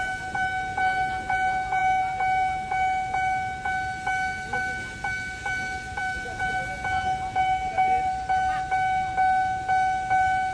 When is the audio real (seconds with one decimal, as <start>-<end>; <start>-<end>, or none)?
0.0-10.5

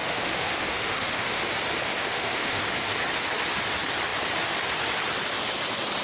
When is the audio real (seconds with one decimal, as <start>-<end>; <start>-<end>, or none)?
1.4-2.0; 2.6-6.0

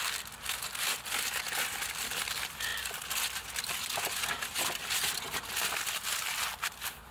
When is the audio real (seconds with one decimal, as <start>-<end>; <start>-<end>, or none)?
0.0-7.1